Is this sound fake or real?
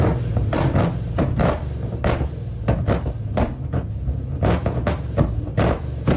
real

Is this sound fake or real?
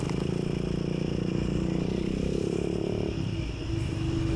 real